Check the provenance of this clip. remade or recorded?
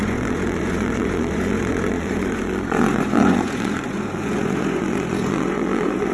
remade